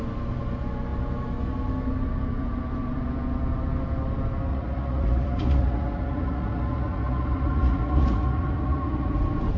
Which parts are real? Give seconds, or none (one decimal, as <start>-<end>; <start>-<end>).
0.0-4.5; 9.2-9.6